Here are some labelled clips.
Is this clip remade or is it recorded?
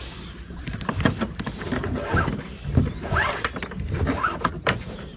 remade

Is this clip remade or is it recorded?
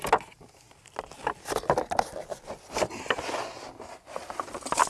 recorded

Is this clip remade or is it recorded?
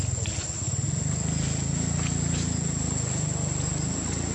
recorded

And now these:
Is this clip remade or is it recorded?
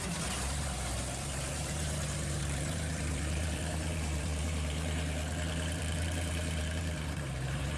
remade